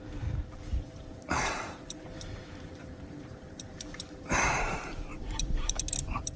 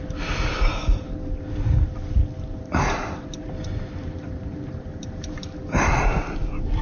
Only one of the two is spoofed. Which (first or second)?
first